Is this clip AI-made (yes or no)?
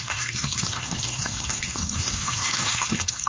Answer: yes